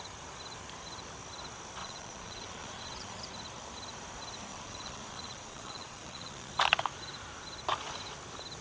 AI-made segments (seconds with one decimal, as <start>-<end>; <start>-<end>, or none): 1.8-3.2; 4.5-6.5